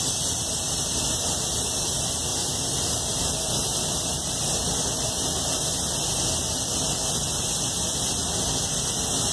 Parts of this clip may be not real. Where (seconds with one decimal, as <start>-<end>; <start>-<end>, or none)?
none